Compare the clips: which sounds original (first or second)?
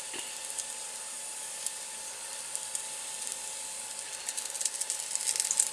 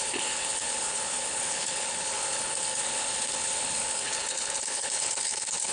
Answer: first